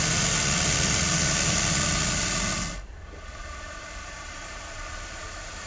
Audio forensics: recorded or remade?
recorded